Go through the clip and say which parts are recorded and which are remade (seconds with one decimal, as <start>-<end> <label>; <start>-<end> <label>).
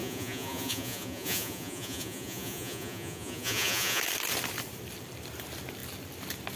0.0-4.0 remade; 4.0-6.6 recorded